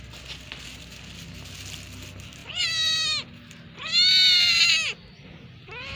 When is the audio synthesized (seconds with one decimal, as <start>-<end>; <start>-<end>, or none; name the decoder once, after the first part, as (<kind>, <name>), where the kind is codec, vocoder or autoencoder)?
none